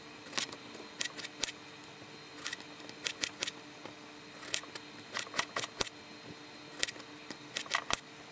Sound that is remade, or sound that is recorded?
recorded